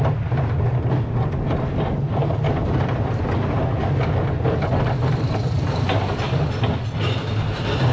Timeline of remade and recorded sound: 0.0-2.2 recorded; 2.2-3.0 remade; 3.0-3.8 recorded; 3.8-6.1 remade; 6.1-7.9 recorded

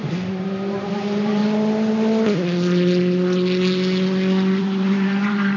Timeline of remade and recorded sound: 0.0-1.4 remade; 1.4-4.6 recorded; 4.6-5.6 remade

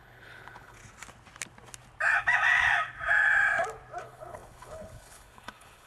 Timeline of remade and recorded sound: 0.0-0.8 remade; 0.8-4.0 recorded; 4.0-5.9 remade

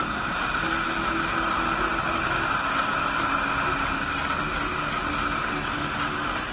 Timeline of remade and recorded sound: 0.0-6.5 recorded

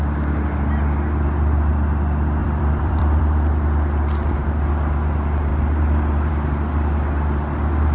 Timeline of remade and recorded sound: 0.0-2.4 recorded; 2.4-3.2 remade; 3.2-4.4 recorded; 4.4-5.1 remade; 5.1-5.5 recorded; 5.5-6.3 remade; 6.3-7.9 recorded

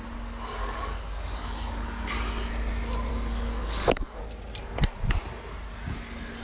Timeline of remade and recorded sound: 0.0-0.6 recorded; 0.6-2.2 remade; 2.2-3.1 recorded; 3.1-4.2 remade; 4.2-6.4 recorded

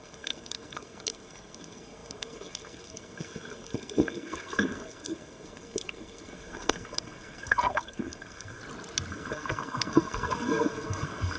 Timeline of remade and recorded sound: 0.0-8.6 remade; 8.6-9.1 recorded; 9.1-11.4 remade

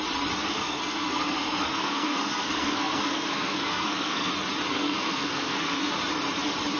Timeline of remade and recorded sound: 0.0-0.4 recorded; 0.4-4.3 remade; 4.3-4.7 recorded; 4.7-5.9 remade; 5.9-6.8 recorded